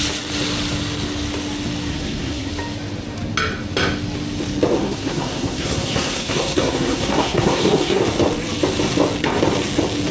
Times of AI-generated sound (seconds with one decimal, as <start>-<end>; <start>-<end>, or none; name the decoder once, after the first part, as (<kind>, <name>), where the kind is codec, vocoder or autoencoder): 1.9-2.5 (codec, SNAC); 4.8-8.0